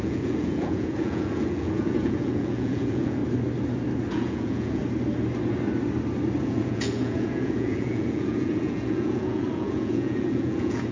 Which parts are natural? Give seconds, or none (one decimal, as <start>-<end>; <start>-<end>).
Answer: 3.2-4.1; 4.8-6.4